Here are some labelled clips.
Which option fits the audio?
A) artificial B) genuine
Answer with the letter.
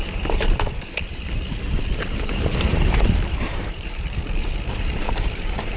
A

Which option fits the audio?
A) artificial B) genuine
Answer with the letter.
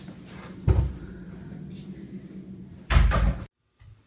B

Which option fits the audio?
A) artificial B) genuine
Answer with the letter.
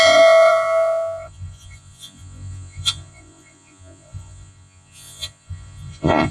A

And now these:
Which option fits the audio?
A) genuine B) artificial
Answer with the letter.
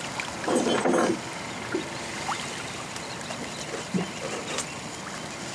A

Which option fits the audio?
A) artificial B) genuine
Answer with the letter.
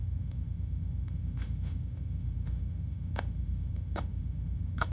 A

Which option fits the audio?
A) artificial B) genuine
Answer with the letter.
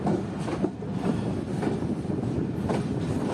B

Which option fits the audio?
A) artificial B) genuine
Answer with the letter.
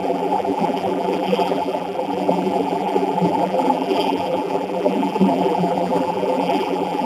A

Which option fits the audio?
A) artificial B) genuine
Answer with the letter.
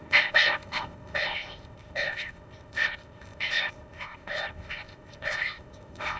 A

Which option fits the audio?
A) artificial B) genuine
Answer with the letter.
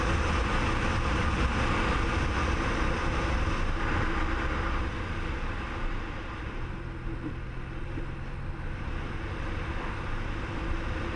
B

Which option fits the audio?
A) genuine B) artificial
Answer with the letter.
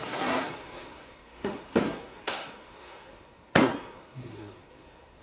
B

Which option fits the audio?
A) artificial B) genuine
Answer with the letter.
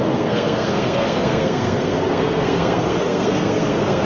A